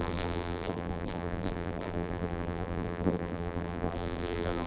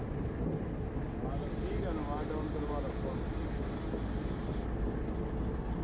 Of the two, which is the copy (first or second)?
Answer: first